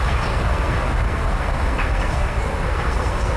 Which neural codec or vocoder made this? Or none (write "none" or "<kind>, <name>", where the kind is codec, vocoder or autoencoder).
codec, SNAC